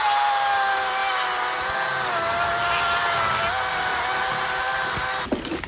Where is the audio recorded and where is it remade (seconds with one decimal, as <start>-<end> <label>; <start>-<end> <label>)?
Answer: 0.0-5.7 recorded